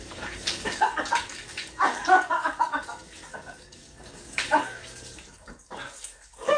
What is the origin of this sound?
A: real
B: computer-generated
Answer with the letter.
B